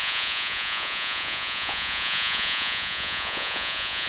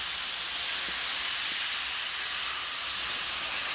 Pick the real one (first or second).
second